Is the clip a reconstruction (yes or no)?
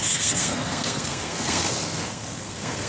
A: yes